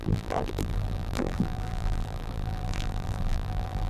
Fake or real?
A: fake